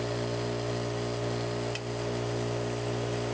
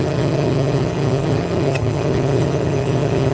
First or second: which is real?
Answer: first